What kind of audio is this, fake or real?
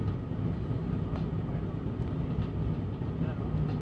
real